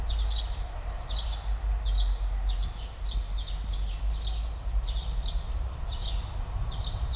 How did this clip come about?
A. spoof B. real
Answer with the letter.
B